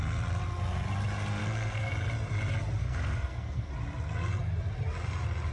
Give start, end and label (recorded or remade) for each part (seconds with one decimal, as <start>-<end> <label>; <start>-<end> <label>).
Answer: 0.0-1.4 recorded; 1.4-1.9 remade; 1.9-2.8 recorded; 2.8-3.7 remade; 3.7-5.5 recorded